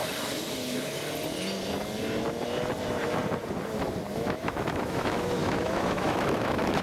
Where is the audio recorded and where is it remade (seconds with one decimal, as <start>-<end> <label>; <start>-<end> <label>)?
0.0-4.1 recorded; 4.1-6.8 remade